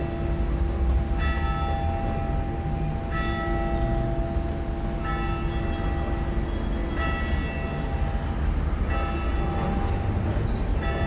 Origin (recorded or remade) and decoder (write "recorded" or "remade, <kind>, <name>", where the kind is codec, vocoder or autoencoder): recorded